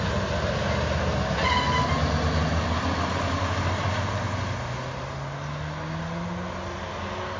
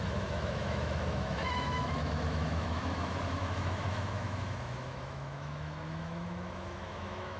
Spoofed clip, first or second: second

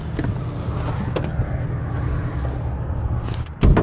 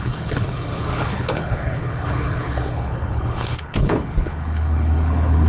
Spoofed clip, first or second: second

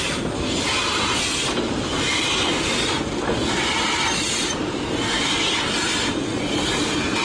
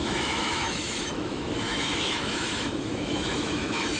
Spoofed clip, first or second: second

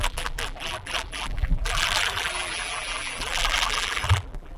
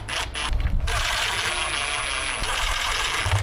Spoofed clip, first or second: first